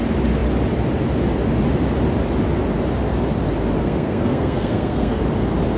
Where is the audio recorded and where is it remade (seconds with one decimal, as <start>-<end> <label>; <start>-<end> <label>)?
0.0-3.8 recorded; 3.8-5.2 remade; 5.2-5.8 recorded